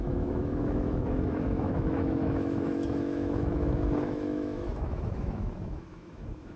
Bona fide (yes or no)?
no